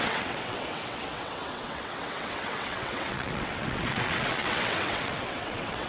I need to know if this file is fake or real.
fake